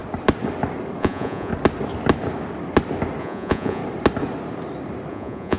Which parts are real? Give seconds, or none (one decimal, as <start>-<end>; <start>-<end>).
0.0-1.0; 1.5-3.2; 3.8-5.1